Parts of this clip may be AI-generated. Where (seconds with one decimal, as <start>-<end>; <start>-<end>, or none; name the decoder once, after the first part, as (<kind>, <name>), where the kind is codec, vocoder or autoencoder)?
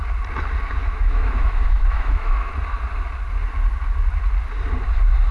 0.8-2.5 (autoencoder, DAC-VAE)